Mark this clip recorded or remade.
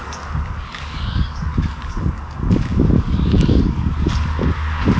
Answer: remade